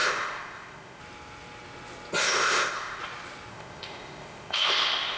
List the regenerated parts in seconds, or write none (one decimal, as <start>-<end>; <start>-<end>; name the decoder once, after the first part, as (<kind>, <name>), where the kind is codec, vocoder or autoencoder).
0.0-1.0 (codec, ZipCodec); 2.2-3.0; 3.5-5.2